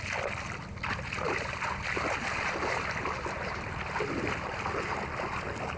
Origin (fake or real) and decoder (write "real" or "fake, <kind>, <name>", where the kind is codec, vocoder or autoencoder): real